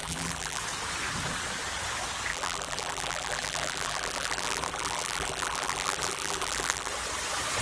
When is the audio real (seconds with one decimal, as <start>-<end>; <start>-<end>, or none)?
0.6-2.3; 6.9-7.6